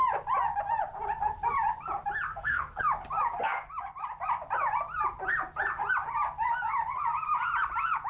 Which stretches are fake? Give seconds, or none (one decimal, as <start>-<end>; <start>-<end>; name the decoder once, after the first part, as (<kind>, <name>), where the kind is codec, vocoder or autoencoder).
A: 2.3-2.8 (codec, SNAC)

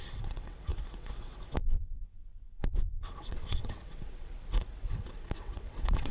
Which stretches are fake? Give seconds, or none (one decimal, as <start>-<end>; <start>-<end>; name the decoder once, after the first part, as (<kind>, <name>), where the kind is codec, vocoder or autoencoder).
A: 0.0-6.1 (vocoder, WaveNeXt)